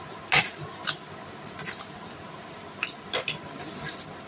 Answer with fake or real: real